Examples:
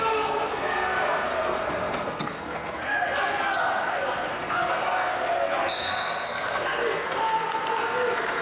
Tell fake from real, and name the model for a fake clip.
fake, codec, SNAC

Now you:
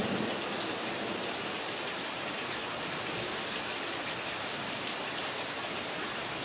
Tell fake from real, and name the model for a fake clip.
real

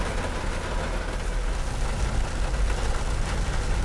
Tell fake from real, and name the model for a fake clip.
real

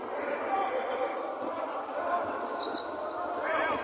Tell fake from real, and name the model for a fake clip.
real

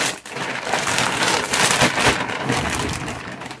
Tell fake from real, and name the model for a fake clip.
real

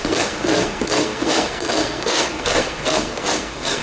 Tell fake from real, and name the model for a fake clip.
fake, codec, SNAC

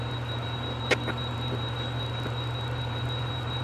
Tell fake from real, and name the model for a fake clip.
real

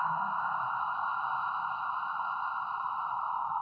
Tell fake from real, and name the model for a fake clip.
real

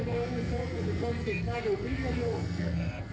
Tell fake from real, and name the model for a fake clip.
fake, codec, SNAC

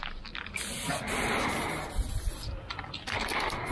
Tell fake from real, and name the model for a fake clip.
real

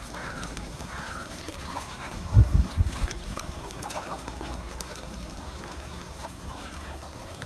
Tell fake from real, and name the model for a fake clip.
fake, codec, SNAC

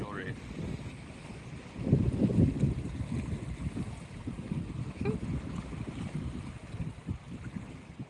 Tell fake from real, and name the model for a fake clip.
real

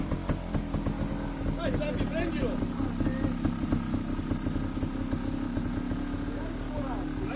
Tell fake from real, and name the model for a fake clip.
real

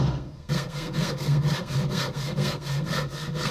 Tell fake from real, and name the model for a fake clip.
fake, codec, SNAC